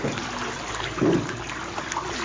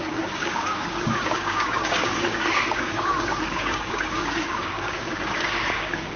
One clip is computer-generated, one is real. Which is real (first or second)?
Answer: first